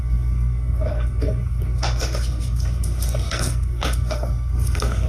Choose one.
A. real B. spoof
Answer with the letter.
B